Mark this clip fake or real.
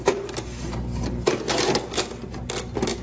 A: real